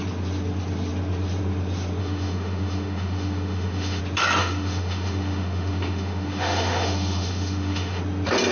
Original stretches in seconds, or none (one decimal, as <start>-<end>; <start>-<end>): 0.0-2.0; 4.0-4.4; 8.0-8.5